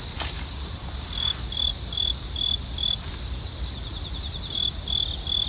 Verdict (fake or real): real